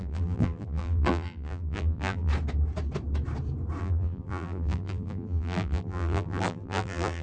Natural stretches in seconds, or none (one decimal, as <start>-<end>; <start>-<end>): 2.3-3.8